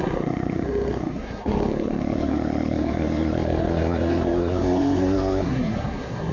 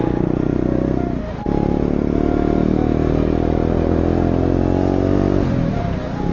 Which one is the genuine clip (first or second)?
second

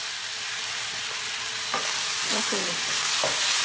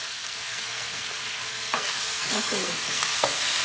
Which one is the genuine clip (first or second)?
first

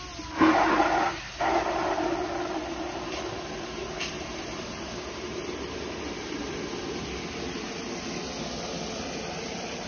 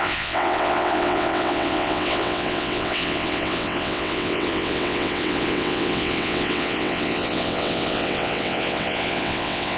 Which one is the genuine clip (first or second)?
first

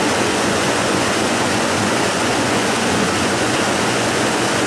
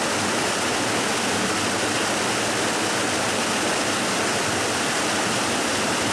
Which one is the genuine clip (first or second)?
second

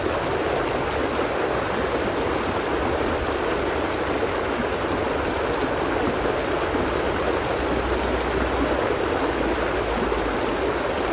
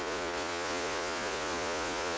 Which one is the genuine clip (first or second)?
first